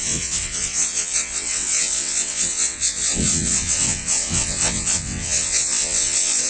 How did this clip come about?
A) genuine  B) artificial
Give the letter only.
B